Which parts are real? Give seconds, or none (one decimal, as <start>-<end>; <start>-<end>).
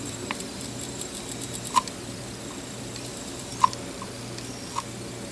3.5-5.3